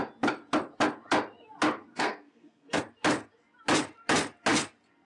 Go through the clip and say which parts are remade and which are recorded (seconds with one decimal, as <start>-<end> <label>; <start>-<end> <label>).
0.0-1.9 recorded; 1.9-2.8 remade; 2.8-5.0 recorded

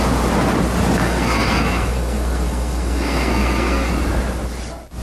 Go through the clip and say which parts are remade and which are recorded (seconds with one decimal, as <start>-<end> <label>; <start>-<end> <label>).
0.0-1.0 recorded; 1.0-3.9 remade; 3.9-5.0 recorded